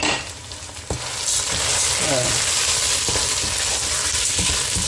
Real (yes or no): yes